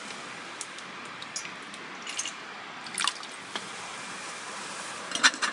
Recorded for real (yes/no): yes